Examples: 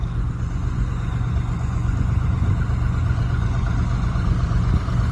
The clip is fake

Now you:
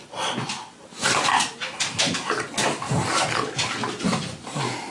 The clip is real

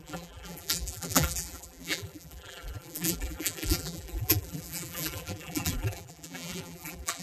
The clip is fake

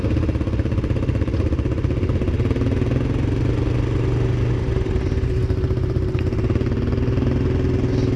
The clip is real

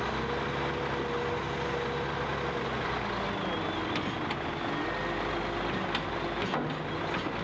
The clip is real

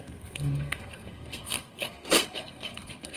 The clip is fake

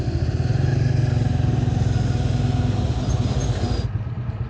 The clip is real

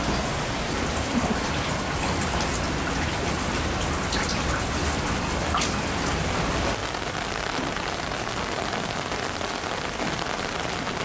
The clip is real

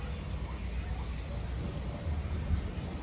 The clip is real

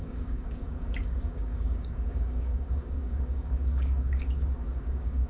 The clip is fake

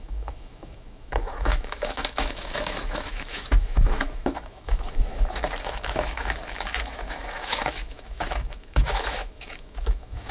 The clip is fake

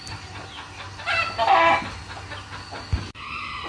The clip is real